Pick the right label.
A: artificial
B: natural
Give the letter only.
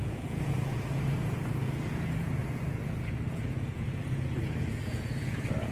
A